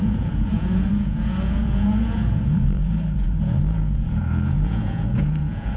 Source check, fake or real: fake